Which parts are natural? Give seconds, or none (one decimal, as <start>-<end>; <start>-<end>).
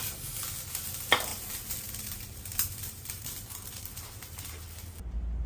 0.0-1.3; 4.6-5.5